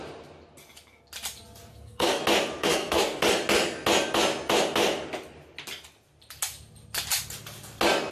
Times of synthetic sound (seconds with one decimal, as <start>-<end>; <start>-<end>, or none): 1.7-2.2; 2.6-3.2